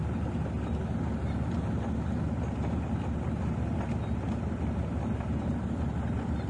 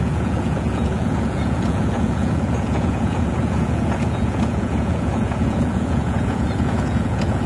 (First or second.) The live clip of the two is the first